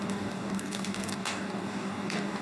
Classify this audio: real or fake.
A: fake